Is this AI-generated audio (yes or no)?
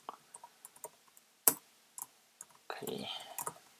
no